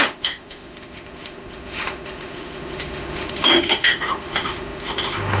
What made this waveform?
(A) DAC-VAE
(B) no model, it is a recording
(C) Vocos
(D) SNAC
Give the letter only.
A